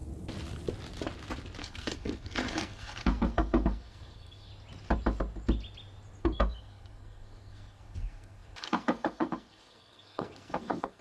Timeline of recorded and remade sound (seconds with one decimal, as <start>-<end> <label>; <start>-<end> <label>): 0.0-1.6 recorded; 1.6-4.5 remade; 4.5-6.2 recorded; 6.2-11.0 remade